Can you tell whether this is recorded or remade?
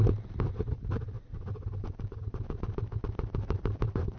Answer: recorded